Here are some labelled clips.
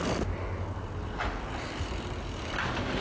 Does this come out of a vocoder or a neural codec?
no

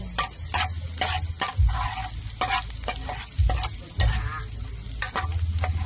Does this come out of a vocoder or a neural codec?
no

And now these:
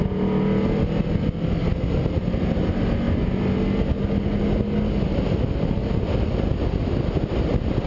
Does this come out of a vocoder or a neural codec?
no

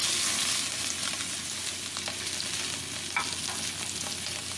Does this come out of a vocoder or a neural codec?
no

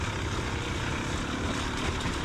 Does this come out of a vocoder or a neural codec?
no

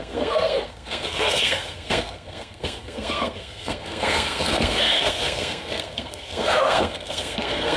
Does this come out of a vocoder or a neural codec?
yes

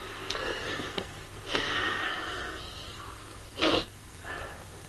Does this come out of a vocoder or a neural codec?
yes